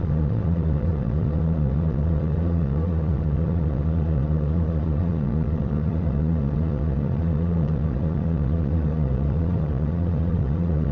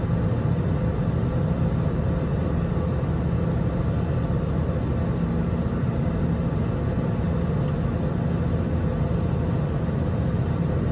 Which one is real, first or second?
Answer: second